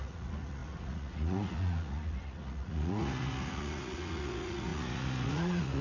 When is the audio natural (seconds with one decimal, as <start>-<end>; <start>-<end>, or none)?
none